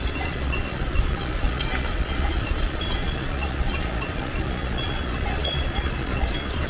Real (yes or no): no